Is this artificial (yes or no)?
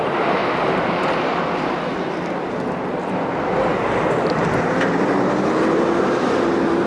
no